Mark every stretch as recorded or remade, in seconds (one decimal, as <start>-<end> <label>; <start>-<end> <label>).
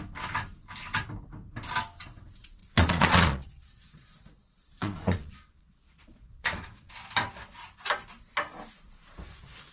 0.0-2.6 recorded; 2.6-6.9 remade; 6.9-9.7 recorded